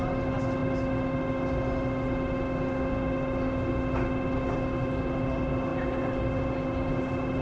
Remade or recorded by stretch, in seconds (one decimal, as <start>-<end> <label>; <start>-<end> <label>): 0.0-7.4 recorded